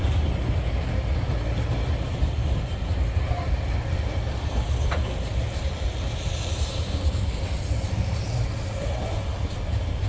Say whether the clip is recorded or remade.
recorded